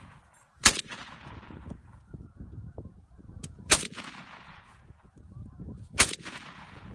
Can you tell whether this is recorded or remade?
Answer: remade